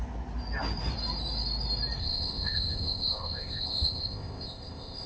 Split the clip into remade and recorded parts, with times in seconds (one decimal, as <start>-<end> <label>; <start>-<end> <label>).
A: 0.0-2.0 recorded; 2.0-5.1 remade